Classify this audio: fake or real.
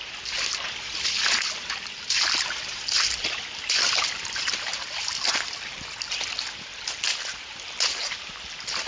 real